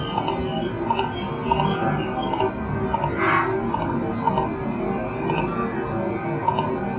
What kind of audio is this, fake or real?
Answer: real